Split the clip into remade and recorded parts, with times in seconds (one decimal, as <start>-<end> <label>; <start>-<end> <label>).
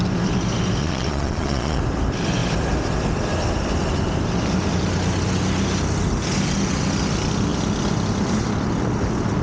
0.0-0.8 recorded; 0.8-1.8 remade; 1.8-9.4 recorded